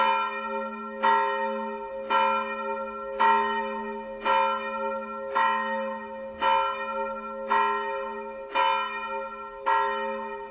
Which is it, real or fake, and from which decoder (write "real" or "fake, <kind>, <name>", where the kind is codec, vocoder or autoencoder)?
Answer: real